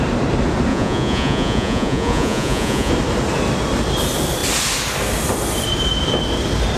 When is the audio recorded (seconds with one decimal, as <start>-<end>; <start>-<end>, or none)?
0.0-0.7; 2.9-6.8